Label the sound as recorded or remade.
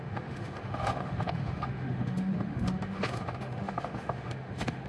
remade